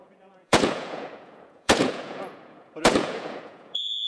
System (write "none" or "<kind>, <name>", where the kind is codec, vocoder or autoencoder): vocoder, Vocos